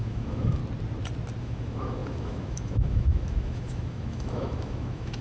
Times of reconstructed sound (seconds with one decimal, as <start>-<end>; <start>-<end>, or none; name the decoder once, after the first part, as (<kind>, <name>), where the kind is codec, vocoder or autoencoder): 0.0-0.6 (autoencoder, DAC-VAE); 1.4-5.2